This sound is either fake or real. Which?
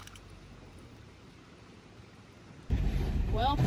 fake